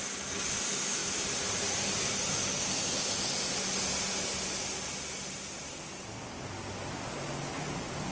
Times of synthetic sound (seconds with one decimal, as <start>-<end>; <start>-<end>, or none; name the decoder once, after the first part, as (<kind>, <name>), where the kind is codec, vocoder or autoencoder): 1.0-2.5 (vocoder, BigVGAN v2)